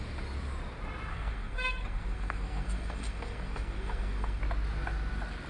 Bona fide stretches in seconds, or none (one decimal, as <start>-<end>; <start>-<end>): 0.0-1.1; 4.4-5.5